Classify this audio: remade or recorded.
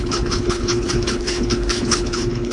remade